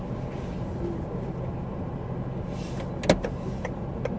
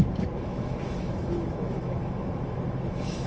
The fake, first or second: second